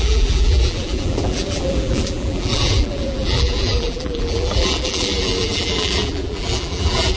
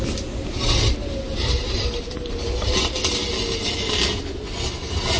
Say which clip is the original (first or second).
second